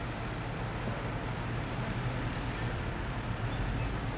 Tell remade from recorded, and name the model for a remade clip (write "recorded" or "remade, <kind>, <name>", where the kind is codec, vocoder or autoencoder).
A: recorded